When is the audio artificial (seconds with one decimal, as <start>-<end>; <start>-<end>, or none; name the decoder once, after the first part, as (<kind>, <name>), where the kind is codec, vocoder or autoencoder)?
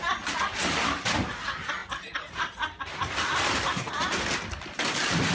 none